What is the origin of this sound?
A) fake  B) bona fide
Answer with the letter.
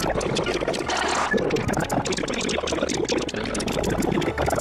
B